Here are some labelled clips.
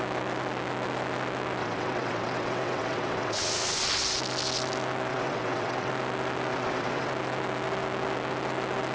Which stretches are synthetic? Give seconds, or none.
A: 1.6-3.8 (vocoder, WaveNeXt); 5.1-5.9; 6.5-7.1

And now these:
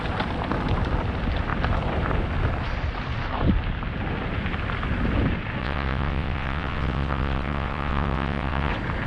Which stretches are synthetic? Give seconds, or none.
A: 5.6-8.7 (vocoder, WaveNeXt)

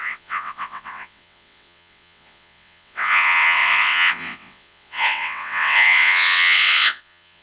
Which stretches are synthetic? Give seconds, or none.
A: 0.0-7.4 (vocoder, WaveNeXt)

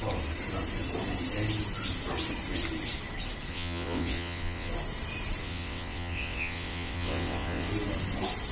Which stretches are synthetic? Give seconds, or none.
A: 3.5-4.7 (vocoder, WaveNeXt); 5.4-7.7

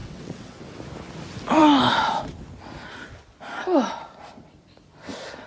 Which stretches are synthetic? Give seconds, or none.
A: 0.0-0.6 (vocoder, WaveNeXt)